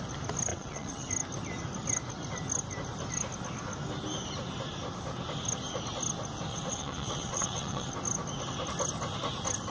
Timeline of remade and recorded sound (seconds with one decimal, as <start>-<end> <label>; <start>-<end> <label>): 0.0-0.5 recorded; 0.5-1.1 remade; 1.1-6.5 recorded; 6.5-7.9 remade; 7.9-9.7 recorded